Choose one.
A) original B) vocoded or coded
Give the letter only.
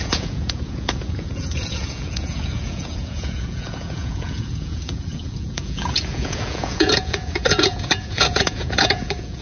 B